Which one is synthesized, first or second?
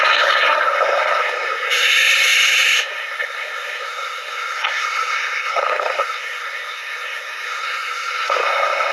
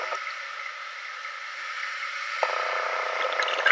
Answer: first